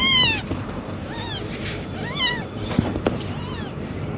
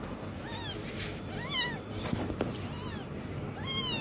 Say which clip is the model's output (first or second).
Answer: first